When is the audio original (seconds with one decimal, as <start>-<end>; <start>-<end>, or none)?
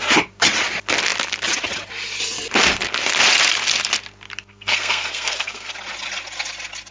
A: 0.0-4.5; 5.7-6.9